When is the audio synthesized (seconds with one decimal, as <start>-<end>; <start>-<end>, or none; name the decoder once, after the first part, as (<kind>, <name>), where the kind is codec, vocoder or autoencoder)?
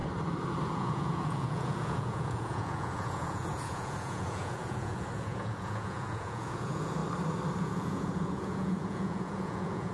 0.7-7.0 (vocoder, Vocos); 7.6-9.9